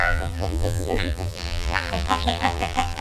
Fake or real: fake